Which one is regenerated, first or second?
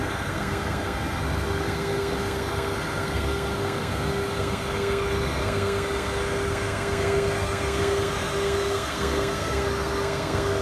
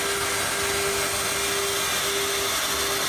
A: first